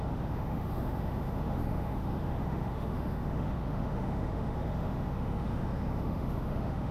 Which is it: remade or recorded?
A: remade